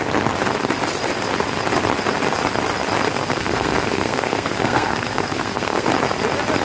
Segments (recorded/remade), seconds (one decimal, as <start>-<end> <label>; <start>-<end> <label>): 0.0-3.1 recorded; 3.1-5.9 remade; 5.9-6.6 recorded

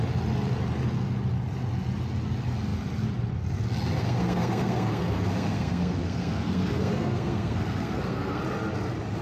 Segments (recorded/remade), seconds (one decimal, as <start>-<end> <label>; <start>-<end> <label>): 0.0-4.0 recorded; 4.0-8.4 remade; 8.4-9.2 recorded

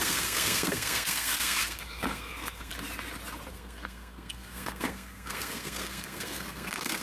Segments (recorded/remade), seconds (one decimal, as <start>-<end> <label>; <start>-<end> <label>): 0.0-2.7 remade; 2.7-3.5 recorded; 3.5-7.0 remade